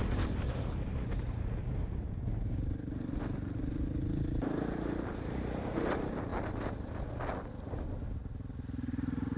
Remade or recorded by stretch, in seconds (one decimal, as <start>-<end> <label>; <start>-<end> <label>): 0.0-9.4 recorded